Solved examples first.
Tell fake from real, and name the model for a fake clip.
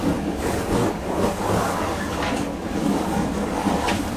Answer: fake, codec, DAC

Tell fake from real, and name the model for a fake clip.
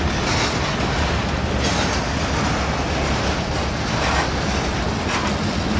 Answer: real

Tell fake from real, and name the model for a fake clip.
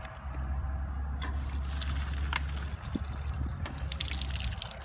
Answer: real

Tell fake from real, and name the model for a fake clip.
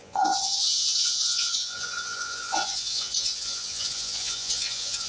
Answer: fake, vocoder, Vocos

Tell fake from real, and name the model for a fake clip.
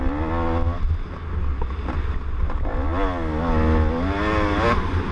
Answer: real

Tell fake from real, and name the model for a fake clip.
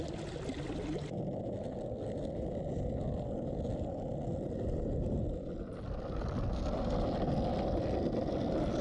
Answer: real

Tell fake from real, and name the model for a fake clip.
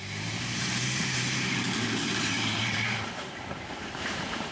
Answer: fake, vocoder, BigVGAN v2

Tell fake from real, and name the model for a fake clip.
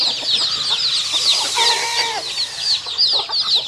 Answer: real